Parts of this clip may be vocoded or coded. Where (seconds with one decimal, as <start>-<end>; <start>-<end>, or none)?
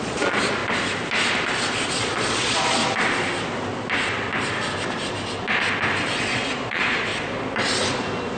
0.0-0.6; 1.9-2.8; 6.2-7.1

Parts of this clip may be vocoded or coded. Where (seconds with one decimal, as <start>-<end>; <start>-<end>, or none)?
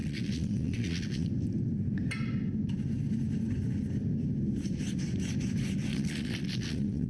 0.0-1.3; 5.9-7.1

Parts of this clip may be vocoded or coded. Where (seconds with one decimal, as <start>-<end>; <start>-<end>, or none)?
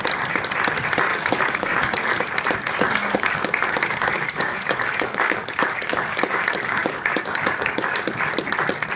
1.1-2.1; 3.0-8.0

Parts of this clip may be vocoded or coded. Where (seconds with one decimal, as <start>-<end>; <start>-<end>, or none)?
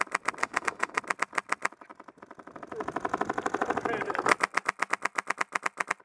0.4-1.0